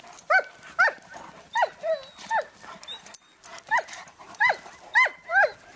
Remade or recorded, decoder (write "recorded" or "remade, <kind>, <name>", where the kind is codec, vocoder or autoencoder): recorded